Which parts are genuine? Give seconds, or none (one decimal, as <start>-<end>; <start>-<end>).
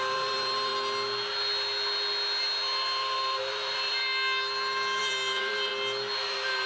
0.7-3.0; 4.0-5.0; 5.7-6.3